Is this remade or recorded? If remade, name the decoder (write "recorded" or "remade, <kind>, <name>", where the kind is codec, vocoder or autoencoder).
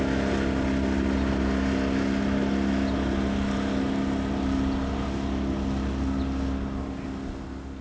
recorded